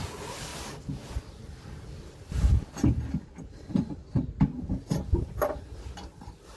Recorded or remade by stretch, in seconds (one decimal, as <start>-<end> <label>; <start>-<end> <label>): 0.0-6.6 recorded